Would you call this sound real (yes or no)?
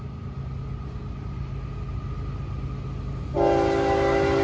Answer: yes